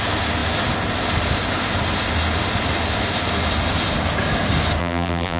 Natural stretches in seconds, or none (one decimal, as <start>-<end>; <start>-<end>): 0.0-4.8